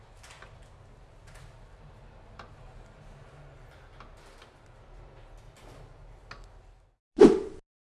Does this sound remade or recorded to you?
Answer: recorded